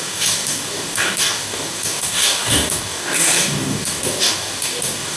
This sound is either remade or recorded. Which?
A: remade